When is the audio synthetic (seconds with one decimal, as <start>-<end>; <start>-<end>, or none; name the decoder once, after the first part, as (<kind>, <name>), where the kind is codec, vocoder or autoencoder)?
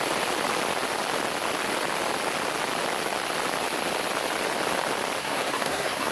5.2-6.1 (codec, SNAC)